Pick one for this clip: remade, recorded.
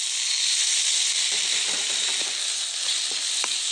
recorded